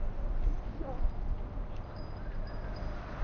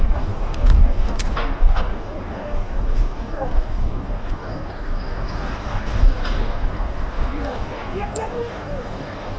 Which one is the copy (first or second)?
second